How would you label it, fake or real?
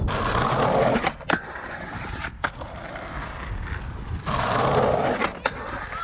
real